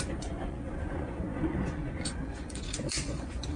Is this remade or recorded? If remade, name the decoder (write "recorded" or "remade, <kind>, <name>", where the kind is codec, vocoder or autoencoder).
remade, vocoder, Vocos